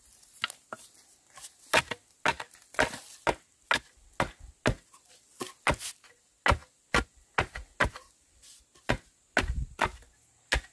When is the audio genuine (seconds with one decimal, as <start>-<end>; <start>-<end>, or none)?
0.0-10.7